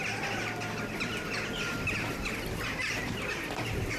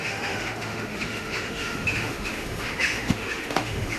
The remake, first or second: second